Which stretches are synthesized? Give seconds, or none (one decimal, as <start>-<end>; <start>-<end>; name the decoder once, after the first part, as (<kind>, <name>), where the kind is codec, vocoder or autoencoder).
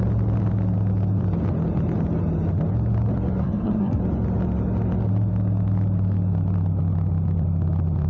3.4-4.0 (codec, SNAC)